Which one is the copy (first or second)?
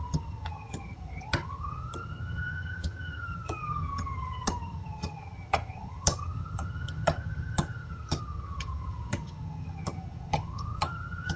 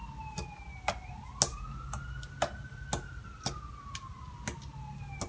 first